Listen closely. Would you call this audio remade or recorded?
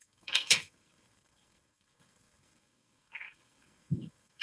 remade